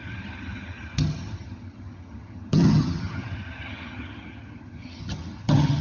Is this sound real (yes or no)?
no